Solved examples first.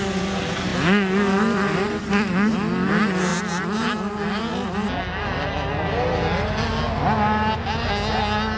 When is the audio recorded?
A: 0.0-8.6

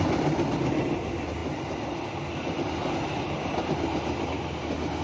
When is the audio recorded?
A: 0.0-5.0

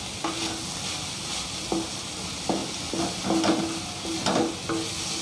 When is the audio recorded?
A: 0.0-5.2

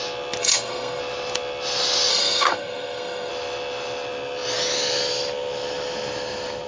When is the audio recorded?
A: 0.0-0.4; 1.0-2.1; 3.3-6.7

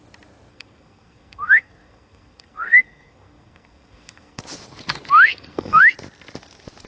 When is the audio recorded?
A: 0.0-0.5; 4.4-5.3; 5.8-6.9

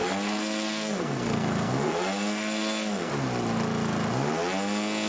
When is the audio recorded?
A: 3.1-5.1

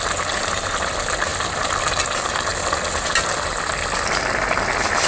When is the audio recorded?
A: 0.0-5.1

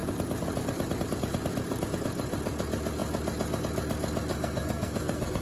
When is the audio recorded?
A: 0.0-4.3